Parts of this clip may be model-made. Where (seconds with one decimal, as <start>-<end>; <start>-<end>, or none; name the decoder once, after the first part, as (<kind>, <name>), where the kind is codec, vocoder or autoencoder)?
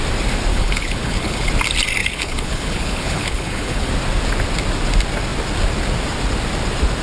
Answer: 0.5-1.5 (codec, HILCodec); 2.0-3.9